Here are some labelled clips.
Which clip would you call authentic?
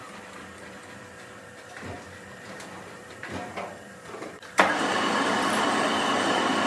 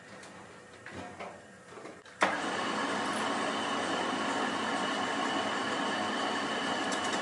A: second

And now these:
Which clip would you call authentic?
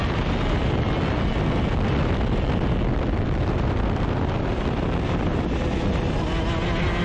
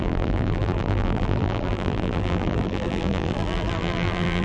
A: first